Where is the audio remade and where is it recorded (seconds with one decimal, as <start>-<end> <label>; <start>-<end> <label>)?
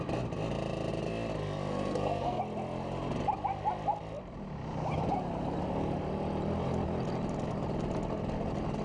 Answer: 0.0-1.7 recorded; 1.7-2.4 remade; 2.4-8.8 recorded